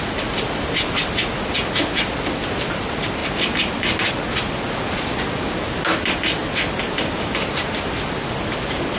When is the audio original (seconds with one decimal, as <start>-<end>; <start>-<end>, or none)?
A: 0.0-6.4; 7.3-9.0